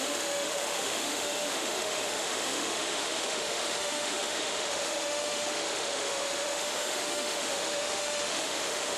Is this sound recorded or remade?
remade